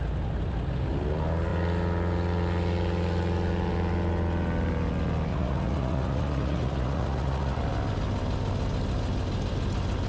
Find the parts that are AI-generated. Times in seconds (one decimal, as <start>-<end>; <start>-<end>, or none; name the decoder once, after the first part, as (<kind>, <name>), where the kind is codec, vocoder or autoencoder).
5.3-7.6 (vocoder, Vocos)

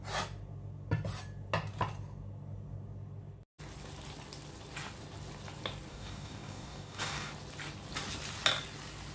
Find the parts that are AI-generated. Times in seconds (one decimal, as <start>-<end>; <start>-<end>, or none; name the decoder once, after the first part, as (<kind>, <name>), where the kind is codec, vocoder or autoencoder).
5.9-7.3 (codec, DAC)

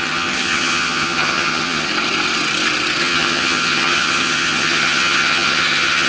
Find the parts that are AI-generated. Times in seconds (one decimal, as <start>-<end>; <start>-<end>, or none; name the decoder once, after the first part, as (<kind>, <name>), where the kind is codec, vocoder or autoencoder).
0.0-1.9 (vocoder, HiFi-GAN); 3.0-6.1

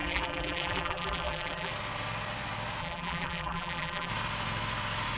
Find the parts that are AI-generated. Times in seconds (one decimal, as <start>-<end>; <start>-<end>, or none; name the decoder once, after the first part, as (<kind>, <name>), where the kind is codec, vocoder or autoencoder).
0.0-1.7 (vocoder, BigVGAN v2); 2.8-4.1